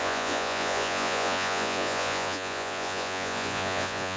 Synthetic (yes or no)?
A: yes